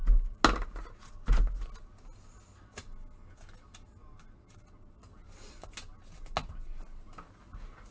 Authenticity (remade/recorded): recorded